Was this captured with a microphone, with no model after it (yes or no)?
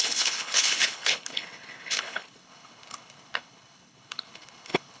no